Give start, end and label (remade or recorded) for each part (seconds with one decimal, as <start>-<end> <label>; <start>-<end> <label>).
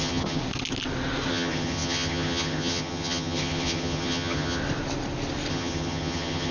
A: 0.0-0.4 remade; 0.4-1.3 recorded; 1.3-4.6 remade; 4.6-5.5 recorded; 5.5-6.5 remade